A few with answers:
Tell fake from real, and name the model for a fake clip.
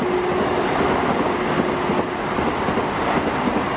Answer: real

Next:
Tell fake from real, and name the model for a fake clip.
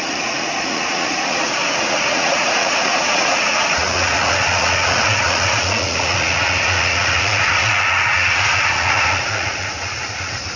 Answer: fake, vocoder, Vocos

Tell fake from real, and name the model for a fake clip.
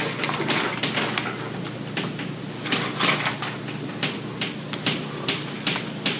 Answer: real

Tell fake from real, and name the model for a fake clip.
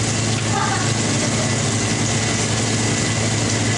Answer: real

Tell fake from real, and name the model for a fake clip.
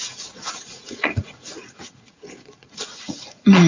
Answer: fake, vocoder, Vocos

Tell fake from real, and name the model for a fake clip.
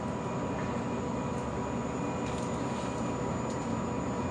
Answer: real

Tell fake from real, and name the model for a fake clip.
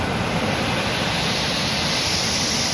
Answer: real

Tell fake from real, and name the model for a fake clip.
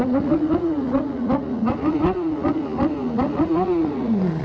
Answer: fake, vocoder, Vocos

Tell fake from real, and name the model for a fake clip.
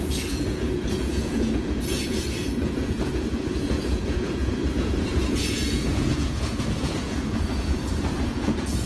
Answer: fake, vocoder, Vocos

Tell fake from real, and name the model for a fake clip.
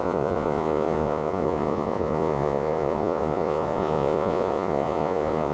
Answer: fake, vocoder, Vocos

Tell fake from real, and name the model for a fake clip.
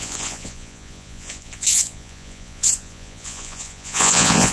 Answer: fake, vocoder, Vocos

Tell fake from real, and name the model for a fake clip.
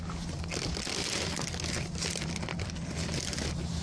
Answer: real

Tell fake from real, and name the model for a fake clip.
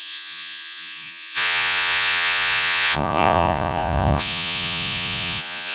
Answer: fake, vocoder, Vocos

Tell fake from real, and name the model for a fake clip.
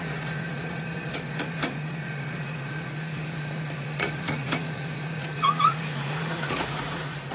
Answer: fake, vocoder, Vocos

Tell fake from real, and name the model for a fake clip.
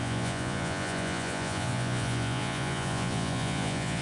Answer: fake, vocoder, Vocos